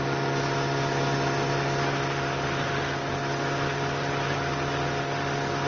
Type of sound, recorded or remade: recorded